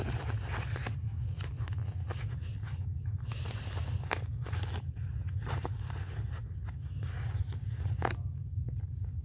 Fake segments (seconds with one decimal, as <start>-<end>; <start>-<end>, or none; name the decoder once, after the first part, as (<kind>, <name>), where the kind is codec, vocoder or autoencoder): none